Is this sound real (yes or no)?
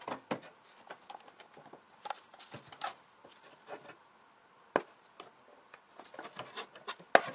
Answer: yes